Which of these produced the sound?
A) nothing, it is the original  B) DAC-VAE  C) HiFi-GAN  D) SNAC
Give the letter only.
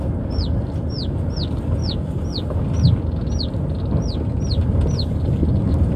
A